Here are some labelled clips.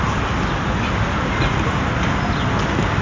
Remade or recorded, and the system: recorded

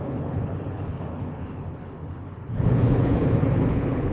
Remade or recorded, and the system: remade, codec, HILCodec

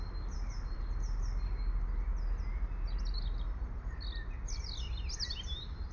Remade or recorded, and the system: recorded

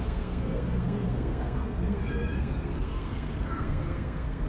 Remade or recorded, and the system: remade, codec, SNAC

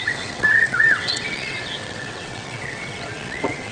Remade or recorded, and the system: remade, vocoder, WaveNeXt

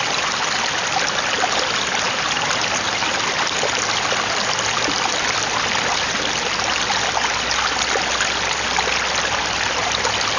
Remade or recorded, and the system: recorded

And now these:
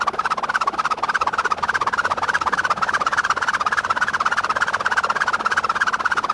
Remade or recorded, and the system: recorded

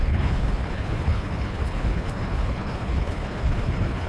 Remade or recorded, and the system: remade, codec, HILCodec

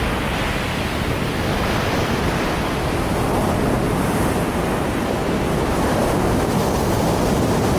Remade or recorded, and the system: recorded